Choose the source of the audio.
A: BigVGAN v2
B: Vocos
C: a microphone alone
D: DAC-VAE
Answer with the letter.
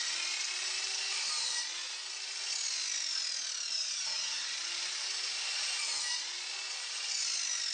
C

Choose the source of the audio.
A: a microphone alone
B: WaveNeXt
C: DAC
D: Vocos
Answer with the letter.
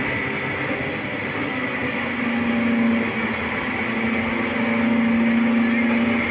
A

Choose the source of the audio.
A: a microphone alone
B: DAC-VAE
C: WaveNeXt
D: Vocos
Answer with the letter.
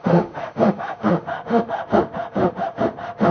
B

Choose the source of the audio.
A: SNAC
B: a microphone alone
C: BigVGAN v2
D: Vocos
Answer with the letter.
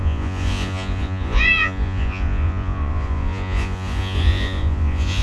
D